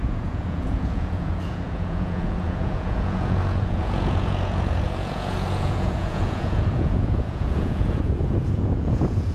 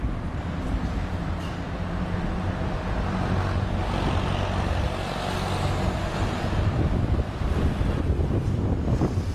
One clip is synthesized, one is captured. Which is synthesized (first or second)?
first